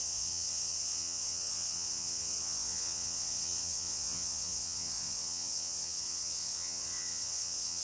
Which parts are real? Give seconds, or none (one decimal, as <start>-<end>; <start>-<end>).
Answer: none